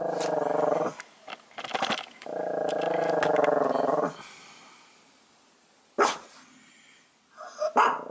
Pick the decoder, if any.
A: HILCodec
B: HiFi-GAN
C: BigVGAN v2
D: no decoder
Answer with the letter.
D